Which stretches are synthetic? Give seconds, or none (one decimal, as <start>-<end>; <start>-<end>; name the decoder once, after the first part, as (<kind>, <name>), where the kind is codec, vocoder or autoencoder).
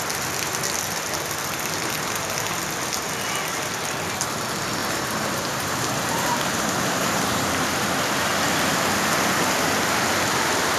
4.8-7.5 (vocoder, BigVGAN v2)